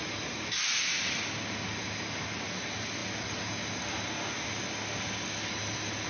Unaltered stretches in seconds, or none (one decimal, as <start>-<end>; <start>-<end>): 0.0-6.1